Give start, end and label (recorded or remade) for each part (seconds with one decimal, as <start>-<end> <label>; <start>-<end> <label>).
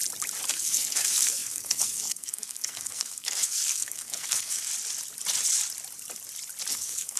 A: 0.0-0.5 recorded; 0.5-4.7 remade; 4.7-6.7 recorded; 6.7-7.2 remade